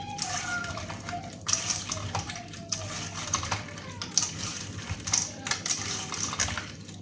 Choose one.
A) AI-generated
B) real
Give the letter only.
A